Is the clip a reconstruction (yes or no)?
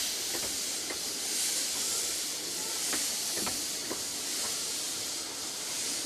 no